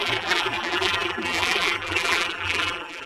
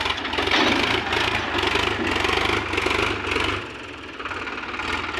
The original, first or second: second